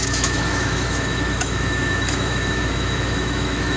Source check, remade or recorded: remade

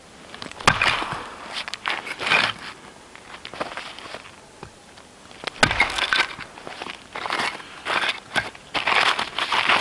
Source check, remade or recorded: recorded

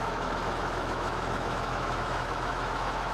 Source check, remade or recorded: remade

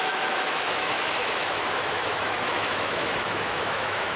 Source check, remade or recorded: remade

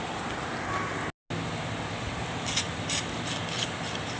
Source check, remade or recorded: recorded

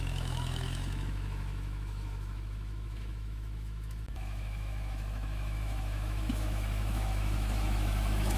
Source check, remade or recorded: remade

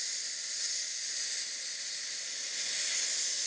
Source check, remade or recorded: recorded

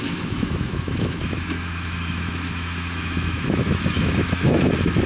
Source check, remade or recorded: remade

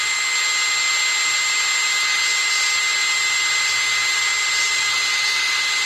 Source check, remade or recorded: recorded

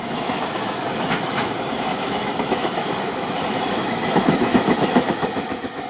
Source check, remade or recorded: remade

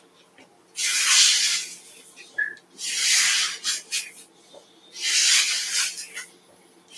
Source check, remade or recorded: recorded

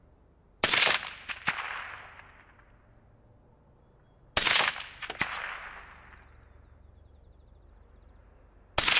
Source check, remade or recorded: recorded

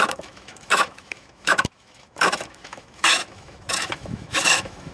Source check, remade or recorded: remade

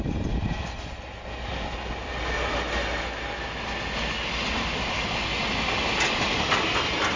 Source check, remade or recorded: recorded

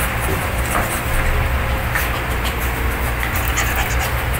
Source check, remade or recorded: recorded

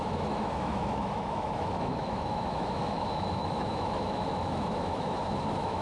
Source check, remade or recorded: remade